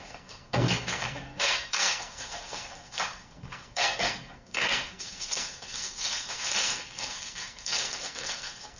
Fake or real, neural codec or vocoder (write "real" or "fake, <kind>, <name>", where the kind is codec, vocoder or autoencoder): fake, codec, SNAC